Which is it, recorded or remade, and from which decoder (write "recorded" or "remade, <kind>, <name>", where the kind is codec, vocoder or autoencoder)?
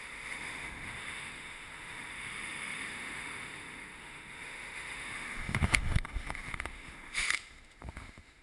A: remade, autoencoder, DAC-VAE